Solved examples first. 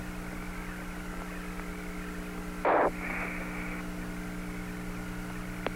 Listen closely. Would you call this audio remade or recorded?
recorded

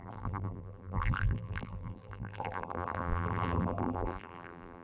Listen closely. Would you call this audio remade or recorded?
remade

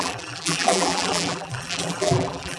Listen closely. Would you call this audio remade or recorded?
remade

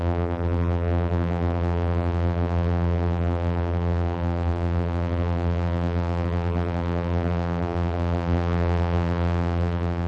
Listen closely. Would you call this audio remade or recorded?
remade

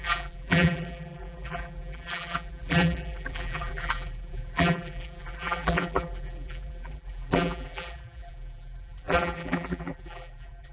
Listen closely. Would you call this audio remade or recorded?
remade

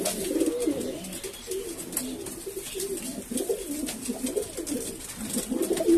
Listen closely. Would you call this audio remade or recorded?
recorded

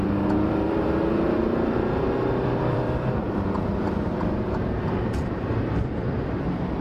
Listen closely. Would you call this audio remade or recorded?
remade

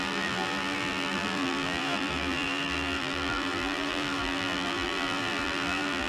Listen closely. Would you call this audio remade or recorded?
remade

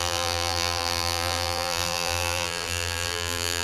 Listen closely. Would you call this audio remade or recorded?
remade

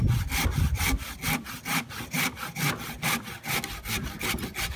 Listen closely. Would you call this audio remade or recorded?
recorded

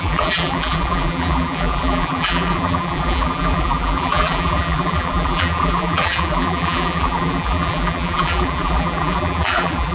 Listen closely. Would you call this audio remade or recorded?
remade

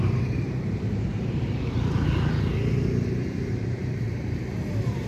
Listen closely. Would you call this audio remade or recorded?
remade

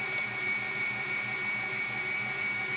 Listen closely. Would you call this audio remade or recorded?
remade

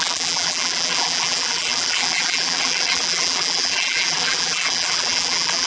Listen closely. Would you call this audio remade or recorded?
remade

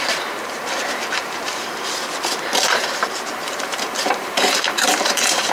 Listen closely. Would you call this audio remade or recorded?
remade